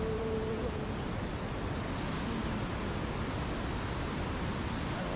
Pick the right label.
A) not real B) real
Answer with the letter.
B